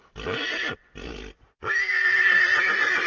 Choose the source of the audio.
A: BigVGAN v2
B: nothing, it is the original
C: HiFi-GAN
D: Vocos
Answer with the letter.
B